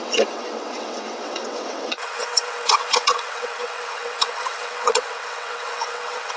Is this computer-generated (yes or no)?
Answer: yes